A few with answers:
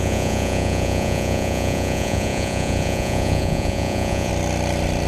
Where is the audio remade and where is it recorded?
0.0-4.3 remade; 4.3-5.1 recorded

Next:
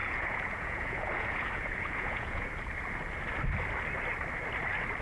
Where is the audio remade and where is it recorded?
0.0-2.5 remade; 2.5-5.0 recorded

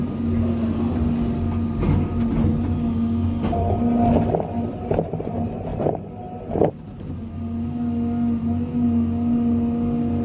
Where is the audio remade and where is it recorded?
0.0-10.2 recorded

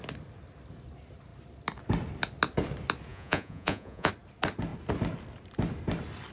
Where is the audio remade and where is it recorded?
0.0-3.1 recorded; 3.1-4.1 remade; 4.1-6.3 recorded